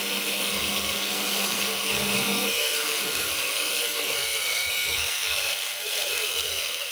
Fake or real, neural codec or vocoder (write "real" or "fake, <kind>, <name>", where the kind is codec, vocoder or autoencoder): fake, codec, SNAC